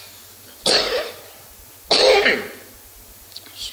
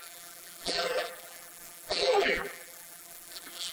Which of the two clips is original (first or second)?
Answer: first